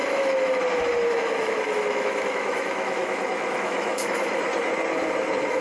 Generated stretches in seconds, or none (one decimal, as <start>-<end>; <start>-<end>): 0.0-0.6; 1.1-4.4